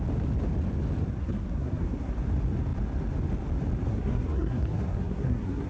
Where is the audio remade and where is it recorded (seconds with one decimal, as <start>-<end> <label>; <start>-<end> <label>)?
0.0-1.2 recorded; 1.2-2.1 remade; 2.1-3.9 recorded; 3.9-5.7 remade